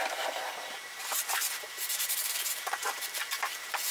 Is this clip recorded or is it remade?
remade